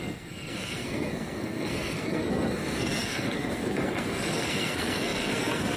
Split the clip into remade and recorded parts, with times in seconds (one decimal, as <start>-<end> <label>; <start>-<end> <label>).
0.0-5.8 remade